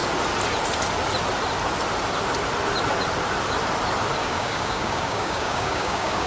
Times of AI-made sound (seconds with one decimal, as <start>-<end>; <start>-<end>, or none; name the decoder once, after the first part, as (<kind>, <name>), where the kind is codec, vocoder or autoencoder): 4.2-6.3 (codec, DAC)